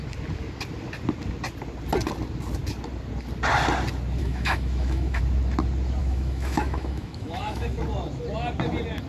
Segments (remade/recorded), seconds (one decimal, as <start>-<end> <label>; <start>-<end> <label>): 0.0-4.2 recorded; 4.2-5.2 remade; 5.2-6.0 recorded; 6.0-7.8 remade; 7.8-9.1 recorded